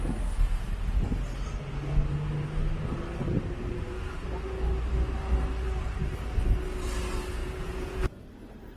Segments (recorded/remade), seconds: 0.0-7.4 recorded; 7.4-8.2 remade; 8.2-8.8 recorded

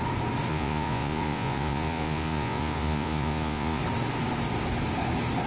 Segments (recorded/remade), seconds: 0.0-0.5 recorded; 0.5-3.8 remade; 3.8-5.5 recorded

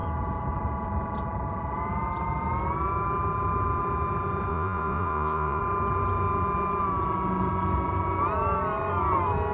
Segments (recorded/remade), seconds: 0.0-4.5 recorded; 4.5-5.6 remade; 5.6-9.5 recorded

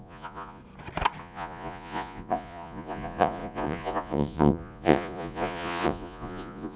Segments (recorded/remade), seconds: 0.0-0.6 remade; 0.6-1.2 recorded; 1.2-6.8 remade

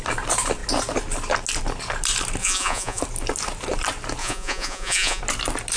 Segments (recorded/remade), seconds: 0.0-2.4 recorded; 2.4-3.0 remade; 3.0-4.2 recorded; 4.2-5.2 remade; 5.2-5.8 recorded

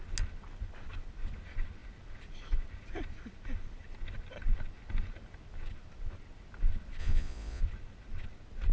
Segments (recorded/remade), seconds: 0.0-7.0 recorded; 7.0-7.6 remade; 7.6-8.7 recorded

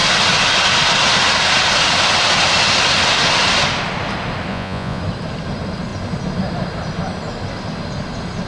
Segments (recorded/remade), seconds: 0.0-4.5 recorded; 4.5-5.0 remade; 5.0-8.5 recorded